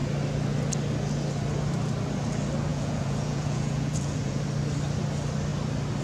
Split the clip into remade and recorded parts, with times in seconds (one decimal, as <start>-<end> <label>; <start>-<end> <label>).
0.0-2.7 recorded; 2.7-4.4 remade; 4.4-6.0 recorded